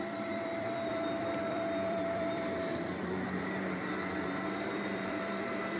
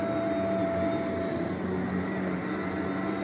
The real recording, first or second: second